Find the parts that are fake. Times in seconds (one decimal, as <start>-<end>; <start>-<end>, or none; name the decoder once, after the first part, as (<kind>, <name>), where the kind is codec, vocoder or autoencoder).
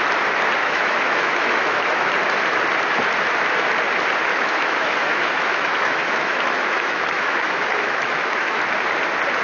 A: 0.6-2.1 (autoencoder, DAC-VAE); 4.3-8.6